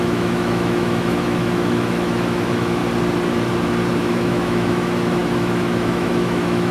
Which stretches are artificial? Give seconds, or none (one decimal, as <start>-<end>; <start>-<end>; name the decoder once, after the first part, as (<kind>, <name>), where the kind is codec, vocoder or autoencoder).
0.0-2.8 (autoencoder, DAC-VAE); 4.0-6.7